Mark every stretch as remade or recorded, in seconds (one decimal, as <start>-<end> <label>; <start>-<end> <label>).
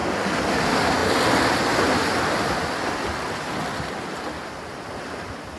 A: 0.0-5.6 recorded